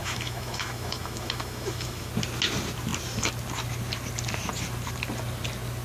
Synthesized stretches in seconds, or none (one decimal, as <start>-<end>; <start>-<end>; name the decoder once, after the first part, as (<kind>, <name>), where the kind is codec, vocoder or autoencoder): 0.0-2.1 (autoencoder, DAC-VAE)